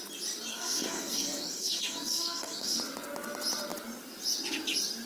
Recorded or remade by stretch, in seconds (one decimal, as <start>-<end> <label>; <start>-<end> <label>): 0.0-0.5 recorded; 0.5-2.8 remade; 2.8-5.1 recorded